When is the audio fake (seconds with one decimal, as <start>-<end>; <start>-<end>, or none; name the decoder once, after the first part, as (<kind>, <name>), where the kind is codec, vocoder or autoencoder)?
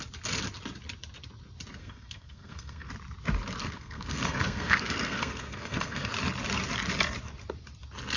1.8-2.9 (codec, SNAC); 3.6-6.1